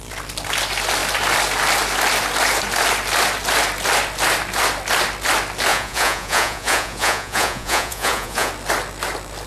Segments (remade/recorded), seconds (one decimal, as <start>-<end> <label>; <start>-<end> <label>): 0.0-5.7 recorded; 5.7-8.5 remade; 8.5-9.5 recorded